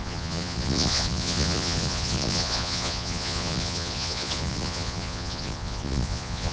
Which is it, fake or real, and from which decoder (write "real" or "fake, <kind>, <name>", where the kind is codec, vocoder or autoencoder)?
fake, vocoder, Vocos